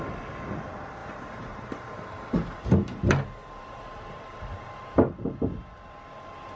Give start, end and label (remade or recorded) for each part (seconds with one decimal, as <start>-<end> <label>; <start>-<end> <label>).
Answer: 0.0-1.0 recorded; 1.0-3.0 remade; 3.0-3.4 recorded; 3.4-4.8 remade; 4.8-6.6 recorded